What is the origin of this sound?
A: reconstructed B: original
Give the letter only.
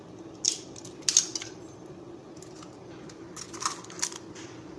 B